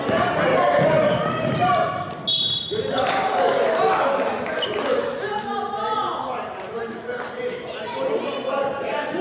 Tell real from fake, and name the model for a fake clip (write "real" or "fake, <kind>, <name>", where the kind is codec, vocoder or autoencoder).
real